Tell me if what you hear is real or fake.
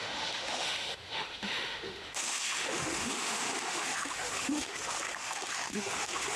fake